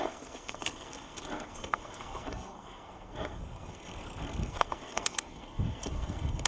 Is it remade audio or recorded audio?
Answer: remade